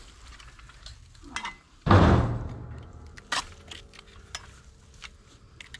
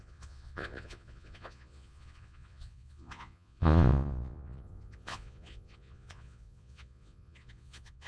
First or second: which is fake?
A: second